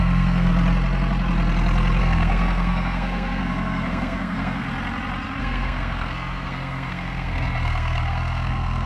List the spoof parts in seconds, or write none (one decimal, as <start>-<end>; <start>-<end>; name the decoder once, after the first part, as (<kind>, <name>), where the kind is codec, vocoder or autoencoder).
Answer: 0.0-0.5 (codec, SNAC); 2.0-4.7; 5.4-8.9